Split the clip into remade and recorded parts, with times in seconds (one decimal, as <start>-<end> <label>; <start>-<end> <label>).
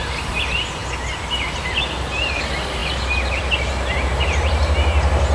0.0-0.8 recorded; 0.8-2.4 remade; 2.4-2.8 recorded; 2.8-3.4 remade; 3.4-5.3 recorded